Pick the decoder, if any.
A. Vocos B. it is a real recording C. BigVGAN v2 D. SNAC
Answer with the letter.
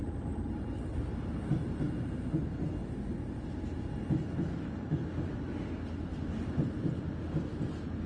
B